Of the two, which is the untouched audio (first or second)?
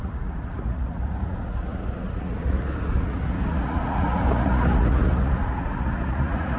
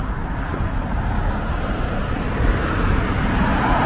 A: second